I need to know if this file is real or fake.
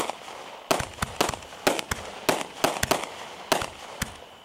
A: real